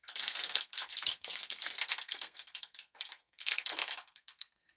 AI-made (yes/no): yes